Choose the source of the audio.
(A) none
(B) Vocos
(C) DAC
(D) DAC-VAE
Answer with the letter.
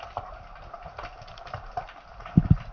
A